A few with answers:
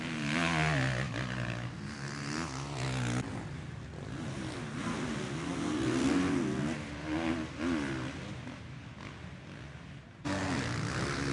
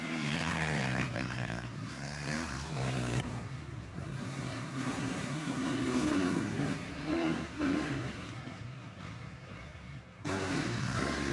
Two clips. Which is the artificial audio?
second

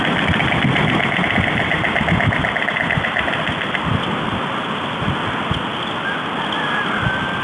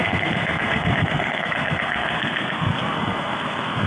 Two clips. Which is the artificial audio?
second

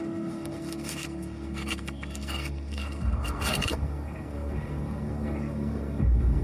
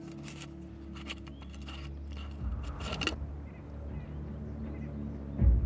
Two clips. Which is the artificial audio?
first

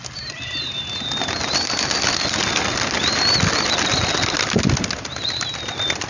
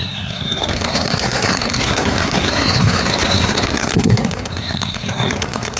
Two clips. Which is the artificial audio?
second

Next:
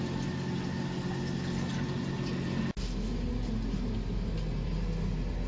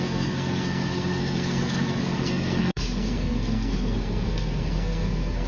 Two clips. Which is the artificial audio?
second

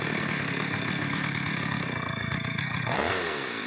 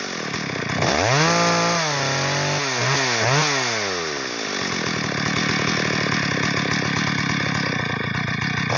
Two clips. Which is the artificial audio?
first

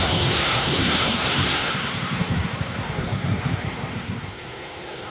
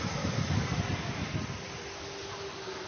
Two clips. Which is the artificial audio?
first